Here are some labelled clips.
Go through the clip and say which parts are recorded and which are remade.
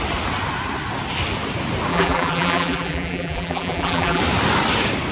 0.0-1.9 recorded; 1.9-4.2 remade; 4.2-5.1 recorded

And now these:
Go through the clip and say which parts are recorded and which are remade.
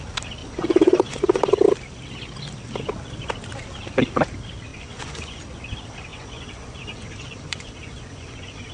0.0-0.4 recorded; 0.4-1.4 remade; 1.4-4.7 recorded; 4.7-5.4 remade; 5.4-6.1 recorded; 6.1-8.7 remade